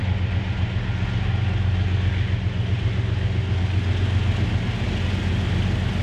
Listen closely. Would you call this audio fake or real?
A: real